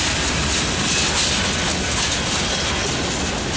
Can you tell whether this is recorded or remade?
recorded